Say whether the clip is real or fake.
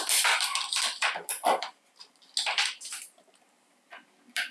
real